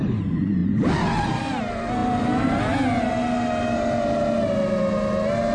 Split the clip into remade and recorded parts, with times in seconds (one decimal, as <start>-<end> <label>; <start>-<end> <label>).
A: 0.0-5.5 recorded